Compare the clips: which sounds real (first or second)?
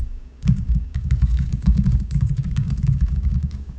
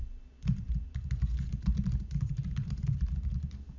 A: second